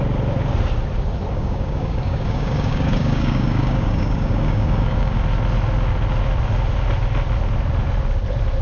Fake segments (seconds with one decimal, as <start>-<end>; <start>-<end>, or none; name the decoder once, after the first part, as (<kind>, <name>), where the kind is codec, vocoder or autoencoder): 1.3-5.2 (codec, DAC)